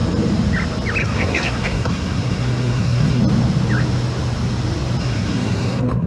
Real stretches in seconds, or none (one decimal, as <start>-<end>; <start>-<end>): 0.0-1.0; 3.2-5.0